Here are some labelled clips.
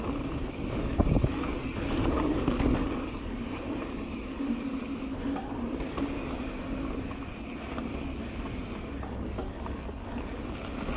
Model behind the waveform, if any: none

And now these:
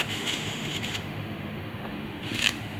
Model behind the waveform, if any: autoencoder, DAC-VAE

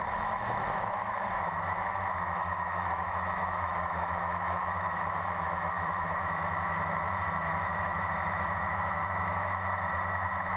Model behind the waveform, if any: autoencoder, DAC-VAE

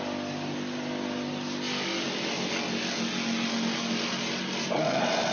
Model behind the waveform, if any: none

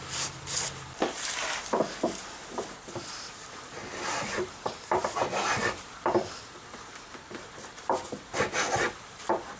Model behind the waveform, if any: vocoder, BigVGAN v2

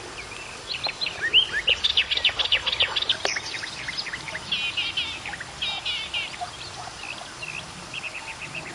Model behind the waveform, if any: none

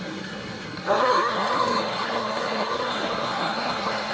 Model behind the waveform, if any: codec, SNAC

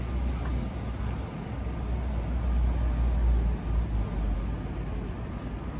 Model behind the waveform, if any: none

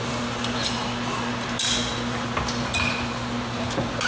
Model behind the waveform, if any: none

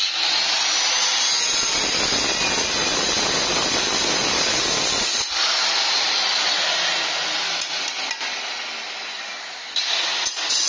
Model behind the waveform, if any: none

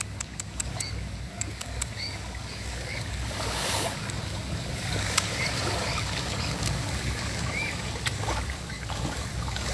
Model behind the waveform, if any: codec, DAC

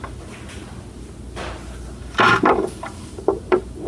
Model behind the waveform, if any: none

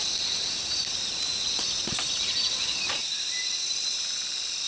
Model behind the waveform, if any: vocoder, BigVGAN v2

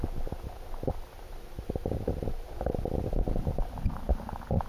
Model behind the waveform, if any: none